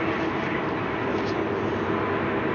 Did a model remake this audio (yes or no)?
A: no